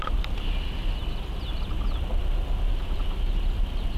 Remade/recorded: recorded